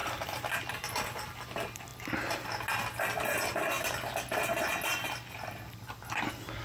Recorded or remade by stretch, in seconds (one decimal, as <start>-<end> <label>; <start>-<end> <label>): 0.0-4.9 recorded; 4.9-5.5 remade; 5.5-6.6 recorded